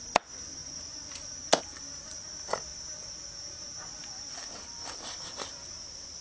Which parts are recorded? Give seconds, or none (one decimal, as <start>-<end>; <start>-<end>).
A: 2.7-4.2